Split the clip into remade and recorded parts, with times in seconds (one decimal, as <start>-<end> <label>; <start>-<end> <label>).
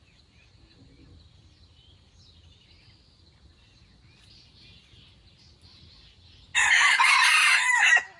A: 0.0-8.2 recorded